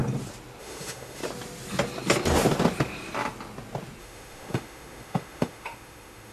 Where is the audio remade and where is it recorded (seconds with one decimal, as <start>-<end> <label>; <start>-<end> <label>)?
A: 0.0-0.6 recorded; 0.6-1.2 remade; 1.2-4.0 recorded; 4.0-6.3 remade